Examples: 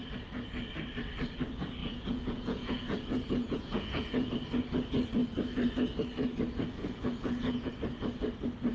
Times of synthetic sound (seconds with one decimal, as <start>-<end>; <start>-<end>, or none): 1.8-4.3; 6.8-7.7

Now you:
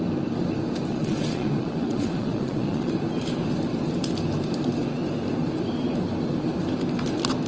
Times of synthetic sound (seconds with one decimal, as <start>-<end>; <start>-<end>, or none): 0.9-2.9

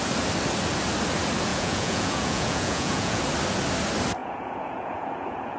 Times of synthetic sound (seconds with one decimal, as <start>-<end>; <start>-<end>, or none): 1.5-3.2; 4.2-5.6

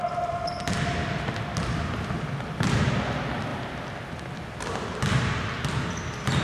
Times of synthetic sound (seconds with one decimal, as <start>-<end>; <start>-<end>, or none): none